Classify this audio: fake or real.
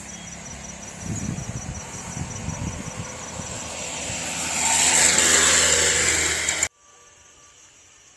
real